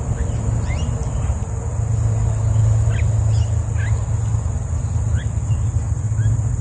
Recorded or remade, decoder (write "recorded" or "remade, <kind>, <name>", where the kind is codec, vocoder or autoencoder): recorded